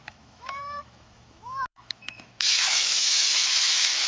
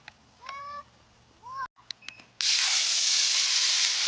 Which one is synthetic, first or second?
first